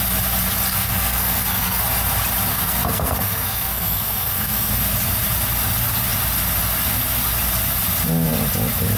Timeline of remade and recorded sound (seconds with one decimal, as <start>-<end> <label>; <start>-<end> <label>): 0.0-0.7 recorded; 0.7-1.8 remade; 1.8-2.5 recorded; 2.5-4.7 remade; 4.7-9.0 recorded